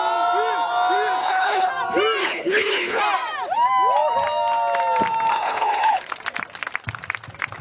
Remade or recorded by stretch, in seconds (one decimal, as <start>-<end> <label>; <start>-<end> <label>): 0.0-1.2 recorded; 1.2-1.7 remade; 1.7-2.2 recorded; 2.2-3.0 remade; 3.0-5.3 recorded; 5.3-6.1 remade; 6.1-7.6 recorded